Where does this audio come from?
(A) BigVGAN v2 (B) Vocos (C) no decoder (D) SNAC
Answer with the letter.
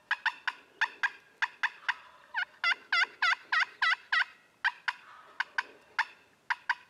C